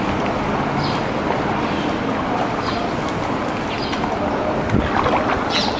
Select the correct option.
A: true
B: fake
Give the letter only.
A